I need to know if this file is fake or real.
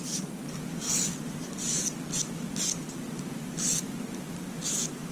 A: real